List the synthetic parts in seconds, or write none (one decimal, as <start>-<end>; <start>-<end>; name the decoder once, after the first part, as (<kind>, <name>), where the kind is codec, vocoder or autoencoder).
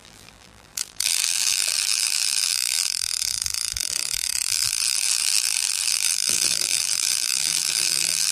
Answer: 0.0-8.3 (vocoder, BigVGAN v2)